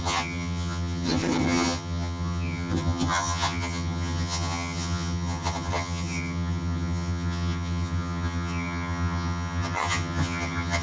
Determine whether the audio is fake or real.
fake